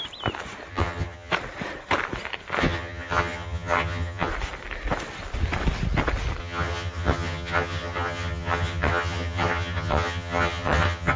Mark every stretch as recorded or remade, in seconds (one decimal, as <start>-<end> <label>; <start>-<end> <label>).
0.0-0.7 recorded; 0.7-1.3 remade; 1.3-2.6 recorded; 2.6-4.3 remade; 4.3-6.4 recorded; 6.4-11.2 remade